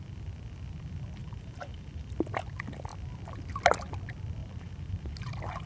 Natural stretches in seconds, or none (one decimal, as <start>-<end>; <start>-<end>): 0.0-1.2; 2.1-4.4; 5.2-5.7